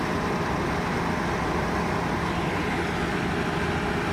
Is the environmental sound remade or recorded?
recorded